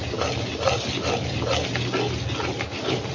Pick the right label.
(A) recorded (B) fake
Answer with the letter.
A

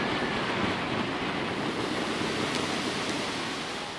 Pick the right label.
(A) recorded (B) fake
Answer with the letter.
A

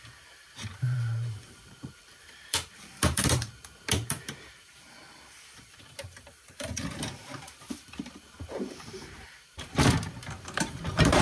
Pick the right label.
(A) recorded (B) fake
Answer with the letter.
B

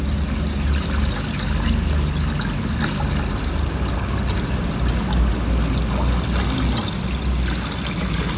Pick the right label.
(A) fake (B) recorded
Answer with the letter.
B